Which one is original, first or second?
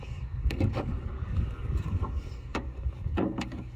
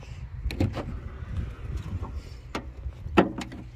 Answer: second